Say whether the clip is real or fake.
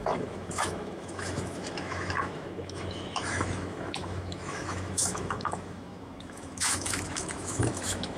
fake